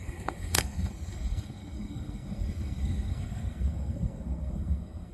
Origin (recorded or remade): remade